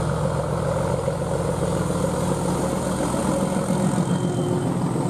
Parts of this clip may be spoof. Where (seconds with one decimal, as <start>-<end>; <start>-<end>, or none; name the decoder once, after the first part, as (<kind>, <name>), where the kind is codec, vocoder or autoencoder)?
none